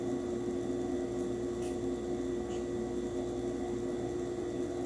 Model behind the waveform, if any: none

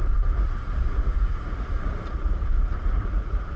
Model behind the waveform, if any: vocoder, Vocos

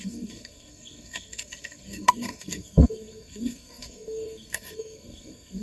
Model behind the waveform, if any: codec, SNAC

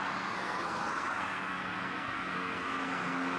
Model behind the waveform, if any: codec, SNAC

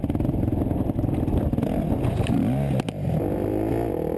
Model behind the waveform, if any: none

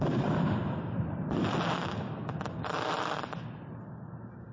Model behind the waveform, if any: none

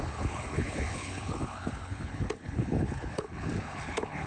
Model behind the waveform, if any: codec, HILCodec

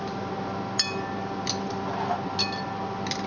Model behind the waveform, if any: none